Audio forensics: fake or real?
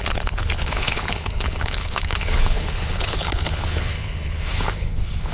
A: fake